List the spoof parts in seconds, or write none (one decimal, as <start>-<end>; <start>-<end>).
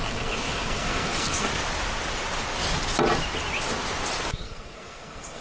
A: 0.0-1.5; 4.3-5.4